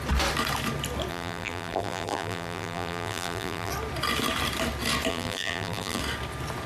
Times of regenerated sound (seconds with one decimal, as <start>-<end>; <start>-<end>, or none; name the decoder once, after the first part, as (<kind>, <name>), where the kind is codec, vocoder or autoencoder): 1.1-3.7 (vocoder, BigVGAN v2); 5.1-6.0